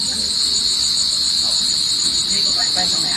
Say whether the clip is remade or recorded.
recorded